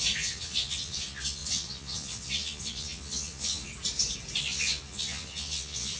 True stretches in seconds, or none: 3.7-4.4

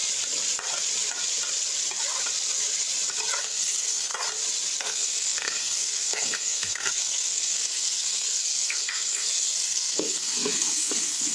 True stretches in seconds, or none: 0.0-3.4; 4.1-4.8